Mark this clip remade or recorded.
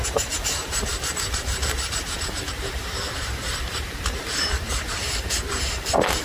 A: remade